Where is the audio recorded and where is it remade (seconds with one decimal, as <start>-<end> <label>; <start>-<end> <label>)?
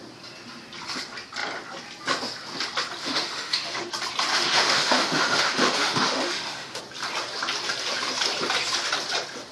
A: 0.0-3.0 recorded; 3.0-3.8 remade; 3.8-4.3 recorded; 4.3-6.8 remade; 6.8-9.5 recorded